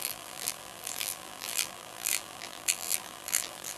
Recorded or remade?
remade